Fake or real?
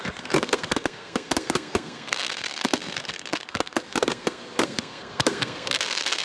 fake